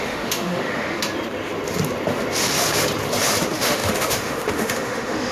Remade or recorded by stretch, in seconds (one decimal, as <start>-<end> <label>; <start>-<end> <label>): 0.0-1.0 remade; 1.0-3.4 recorded; 3.4-5.3 remade